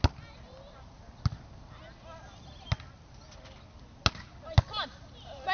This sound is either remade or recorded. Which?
recorded